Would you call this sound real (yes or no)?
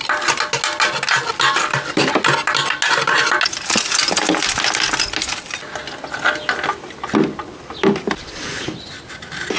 yes